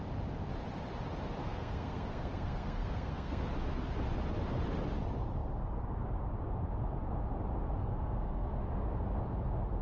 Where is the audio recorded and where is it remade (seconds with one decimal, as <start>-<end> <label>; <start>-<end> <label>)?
0.0-1.4 recorded; 1.4-3.4 remade; 3.4-7.8 recorded; 7.8-8.5 remade; 8.5-9.8 recorded